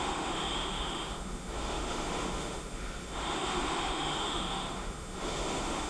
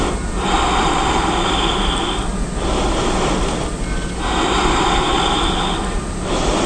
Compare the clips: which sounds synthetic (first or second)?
first